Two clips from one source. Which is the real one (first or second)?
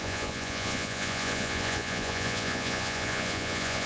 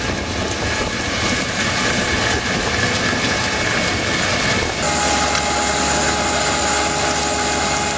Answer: second